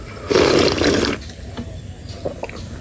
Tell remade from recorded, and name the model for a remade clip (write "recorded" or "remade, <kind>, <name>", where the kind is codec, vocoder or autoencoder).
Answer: recorded